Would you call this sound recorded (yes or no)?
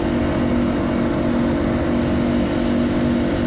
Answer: yes